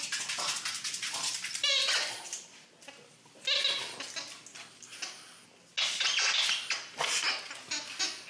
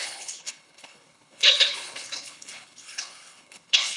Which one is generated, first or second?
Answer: second